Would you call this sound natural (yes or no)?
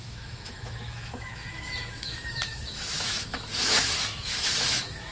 no